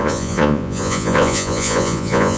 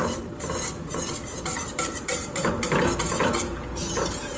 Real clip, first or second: second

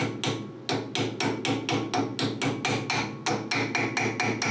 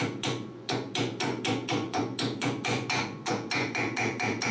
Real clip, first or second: first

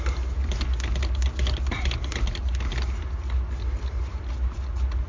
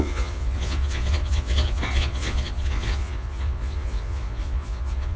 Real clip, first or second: first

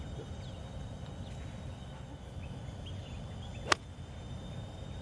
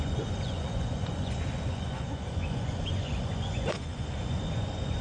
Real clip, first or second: first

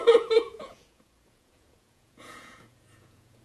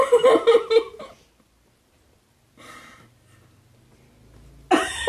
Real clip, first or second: second